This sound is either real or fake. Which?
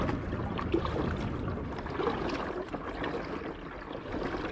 real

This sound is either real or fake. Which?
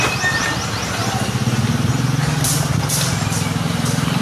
real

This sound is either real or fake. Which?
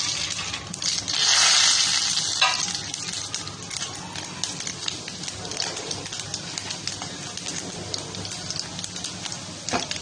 real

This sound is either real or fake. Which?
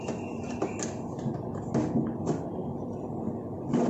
real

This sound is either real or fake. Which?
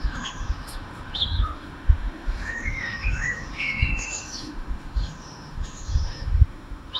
fake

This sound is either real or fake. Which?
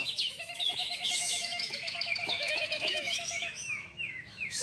fake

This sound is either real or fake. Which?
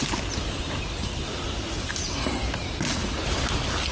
real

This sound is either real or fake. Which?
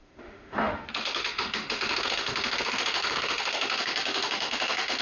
fake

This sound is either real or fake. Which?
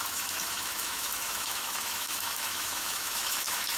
fake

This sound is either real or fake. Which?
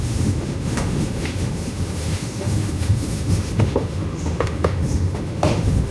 fake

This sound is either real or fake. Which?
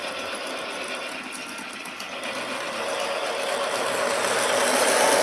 real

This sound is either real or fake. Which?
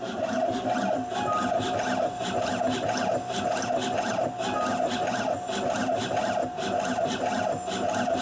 real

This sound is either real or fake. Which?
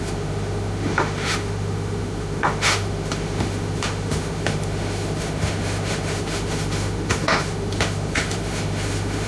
fake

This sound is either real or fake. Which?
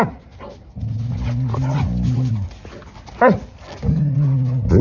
real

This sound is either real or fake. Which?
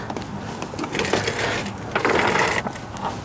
real